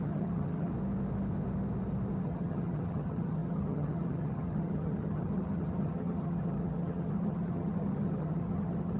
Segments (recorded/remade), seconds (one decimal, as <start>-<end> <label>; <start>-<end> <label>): 0.0-0.7 remade; 0.7-2.2 recorded; 2.2-9.0 remade